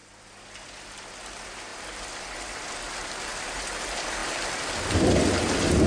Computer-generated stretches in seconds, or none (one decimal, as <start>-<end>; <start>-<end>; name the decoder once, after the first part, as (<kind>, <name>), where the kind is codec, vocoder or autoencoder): none